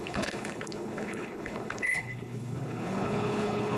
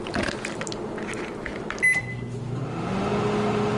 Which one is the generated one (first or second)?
first